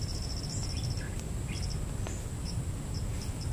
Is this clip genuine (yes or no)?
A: yes